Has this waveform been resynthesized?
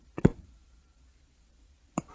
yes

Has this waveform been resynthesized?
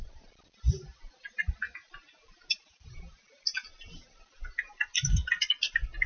no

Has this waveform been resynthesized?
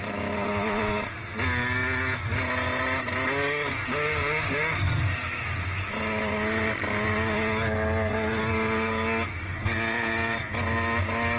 no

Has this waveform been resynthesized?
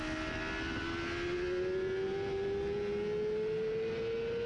no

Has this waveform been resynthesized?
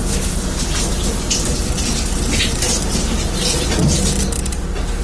no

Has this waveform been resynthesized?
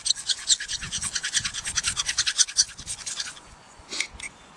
yes